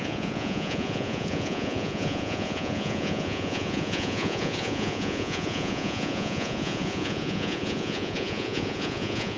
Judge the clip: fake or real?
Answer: fake